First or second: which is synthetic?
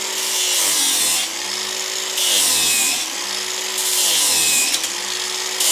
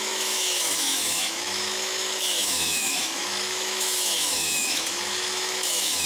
second